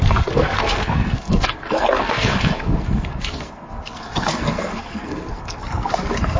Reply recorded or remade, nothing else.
remade